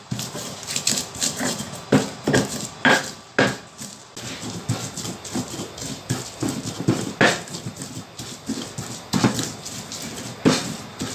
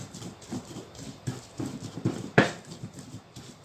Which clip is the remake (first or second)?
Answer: second